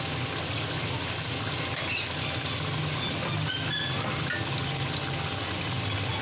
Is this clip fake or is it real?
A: real